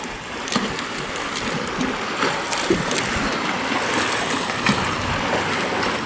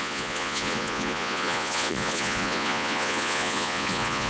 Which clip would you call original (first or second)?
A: first